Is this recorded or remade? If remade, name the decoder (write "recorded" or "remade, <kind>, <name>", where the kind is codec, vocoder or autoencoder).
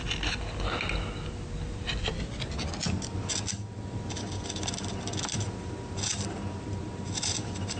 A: recorded